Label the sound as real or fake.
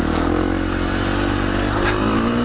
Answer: real